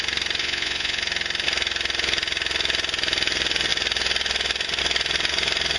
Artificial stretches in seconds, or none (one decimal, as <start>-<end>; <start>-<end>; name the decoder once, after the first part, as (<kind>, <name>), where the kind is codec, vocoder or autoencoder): 0.4-1.0 (vocoder, Vocos)